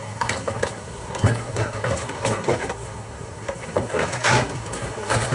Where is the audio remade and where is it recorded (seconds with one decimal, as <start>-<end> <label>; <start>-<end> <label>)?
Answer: 0.0-5.3 remade